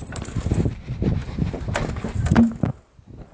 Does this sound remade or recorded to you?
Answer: remade